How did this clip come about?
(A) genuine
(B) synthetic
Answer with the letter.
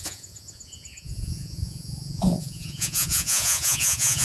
B